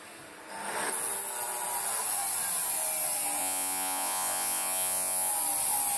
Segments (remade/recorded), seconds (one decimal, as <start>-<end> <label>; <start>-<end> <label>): 0.0-3.4 recorded; 3.4-5.3 remade; 5.3-6.0 recorded